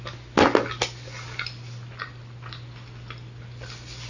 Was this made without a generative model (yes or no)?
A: yes